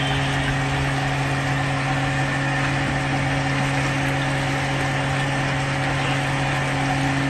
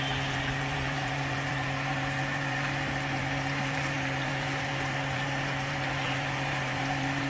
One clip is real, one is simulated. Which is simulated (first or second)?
second